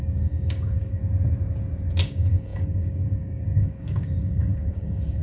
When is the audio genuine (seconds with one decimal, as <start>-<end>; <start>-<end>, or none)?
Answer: 1.0-2.0